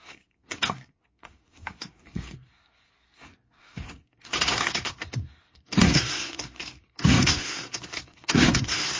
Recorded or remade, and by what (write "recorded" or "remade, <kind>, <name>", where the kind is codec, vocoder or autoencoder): remade, codec, SNAC